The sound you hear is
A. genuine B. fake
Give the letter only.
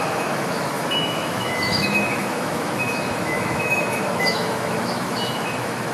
B